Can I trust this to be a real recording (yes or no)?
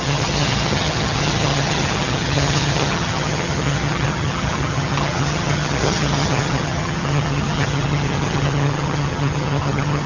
no